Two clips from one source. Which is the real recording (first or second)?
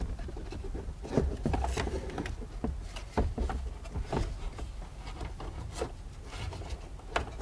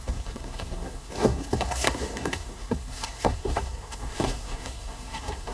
first